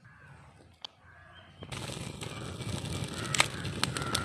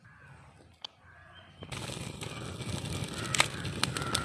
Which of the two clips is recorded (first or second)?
first